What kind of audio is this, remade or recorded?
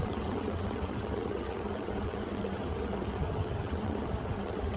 remade